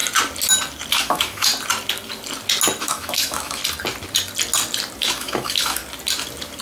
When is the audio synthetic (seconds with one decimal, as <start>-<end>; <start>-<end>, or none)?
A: 0.9-1.5; 2.8-3.6; 5.0-5.8